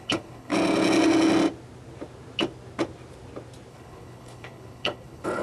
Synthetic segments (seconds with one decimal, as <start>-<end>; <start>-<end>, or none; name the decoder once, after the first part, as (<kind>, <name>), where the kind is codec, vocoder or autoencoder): 0.0-0.5 (codec, HILCodec); 3.7-5.4